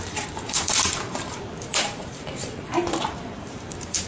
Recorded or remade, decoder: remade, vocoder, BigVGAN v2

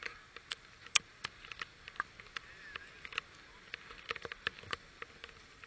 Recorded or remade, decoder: recorded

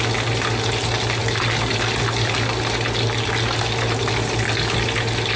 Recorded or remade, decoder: recorded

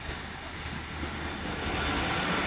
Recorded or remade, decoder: recorded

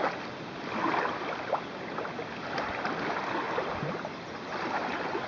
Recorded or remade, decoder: recorded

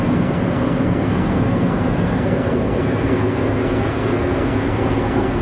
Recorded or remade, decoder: remade, codec, SNAC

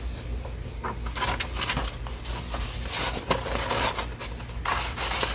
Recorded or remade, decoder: recorded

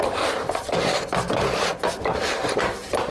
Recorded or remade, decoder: remade, vocoder, BigVGAN v2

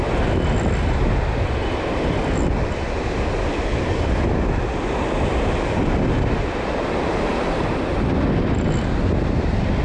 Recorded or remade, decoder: recorded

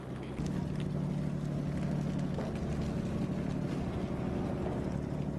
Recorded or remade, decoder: recorded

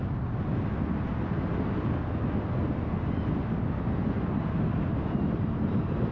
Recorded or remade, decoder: recorded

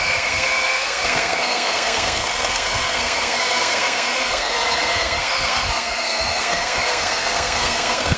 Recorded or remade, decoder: remade, codec, SNAC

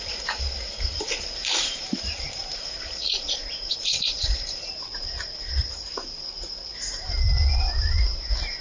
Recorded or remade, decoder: remade, vocoder, BigVGAN v2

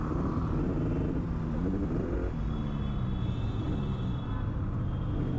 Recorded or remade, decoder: recorded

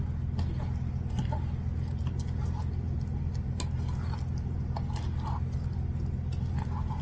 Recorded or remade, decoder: recorded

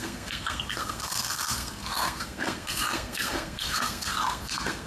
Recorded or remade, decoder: remade, codec, SNAC